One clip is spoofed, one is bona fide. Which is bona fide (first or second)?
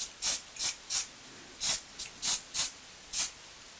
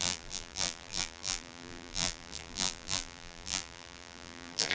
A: first